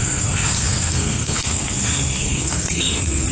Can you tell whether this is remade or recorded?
remade